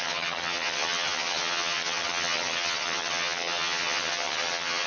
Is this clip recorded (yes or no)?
no